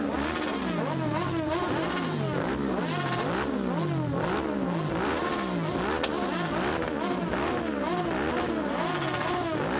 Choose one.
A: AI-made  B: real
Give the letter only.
B